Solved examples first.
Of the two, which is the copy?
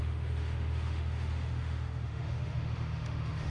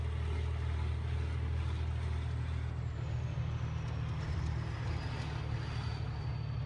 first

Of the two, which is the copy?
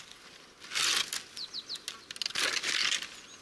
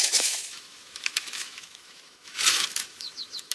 second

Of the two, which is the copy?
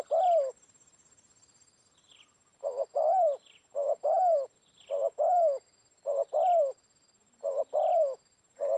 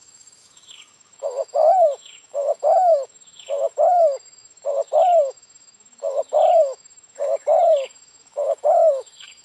second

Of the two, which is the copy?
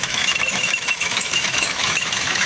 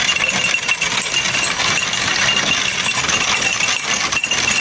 first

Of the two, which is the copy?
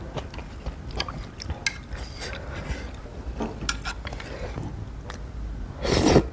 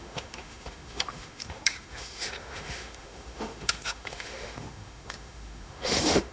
second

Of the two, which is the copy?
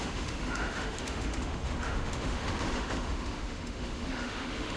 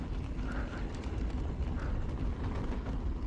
first